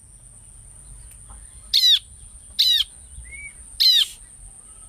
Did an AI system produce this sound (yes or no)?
no